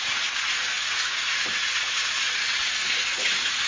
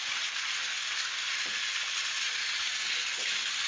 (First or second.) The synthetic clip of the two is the first